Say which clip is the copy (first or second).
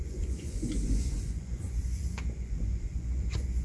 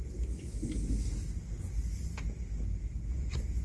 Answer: first